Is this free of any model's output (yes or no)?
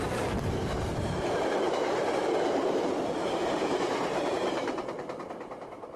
no